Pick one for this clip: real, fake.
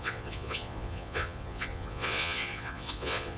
fake